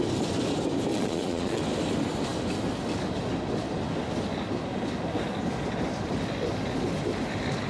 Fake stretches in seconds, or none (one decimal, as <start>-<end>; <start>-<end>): 0.9-1.6

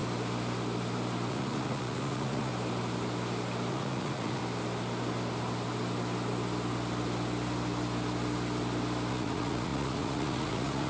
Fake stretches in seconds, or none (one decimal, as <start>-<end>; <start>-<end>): 1.3-2.5; 3.7-4.4; 9.1-10.9

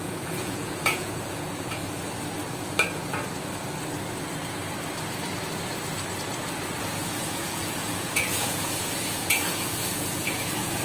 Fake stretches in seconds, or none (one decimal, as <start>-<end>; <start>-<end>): 0.0-1.8; 6.8-10.8

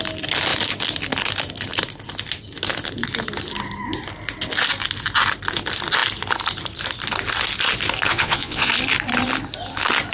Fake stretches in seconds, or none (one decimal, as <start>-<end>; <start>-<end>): 8.1-8.7

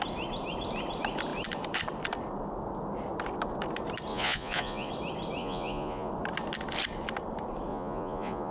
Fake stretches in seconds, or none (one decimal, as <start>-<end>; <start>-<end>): 4.1-4.9; 5.4-6.1; 7.7-8.5

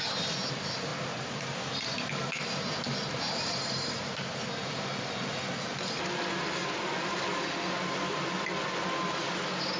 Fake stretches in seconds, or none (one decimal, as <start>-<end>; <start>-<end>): none